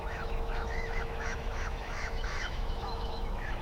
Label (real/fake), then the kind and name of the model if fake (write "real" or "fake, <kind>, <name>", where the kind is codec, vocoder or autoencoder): fake, autoencoder, DAC-VAE